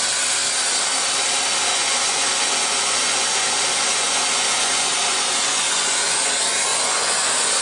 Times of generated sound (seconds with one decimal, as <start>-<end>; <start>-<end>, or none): 1.7-6.3; 6.7-7.6